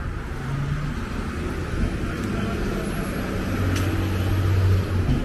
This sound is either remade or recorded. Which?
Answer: recorded